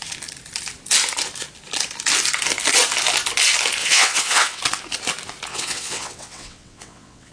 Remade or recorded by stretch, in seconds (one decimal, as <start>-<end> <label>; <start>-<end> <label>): 0.0-3.8 recorded; 3.8-4.6 remade; 4.6-5.5 recorded; 5.5-7.3 remade